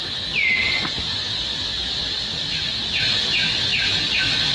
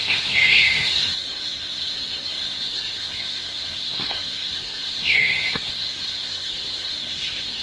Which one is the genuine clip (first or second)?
first